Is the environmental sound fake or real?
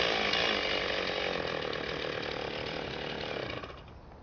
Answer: real